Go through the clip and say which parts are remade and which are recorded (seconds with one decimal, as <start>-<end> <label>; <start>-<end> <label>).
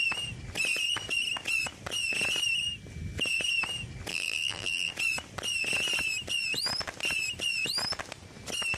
0.0-4.1 recorded; 4.1-4.9 remade; 4.9-8.8 recorded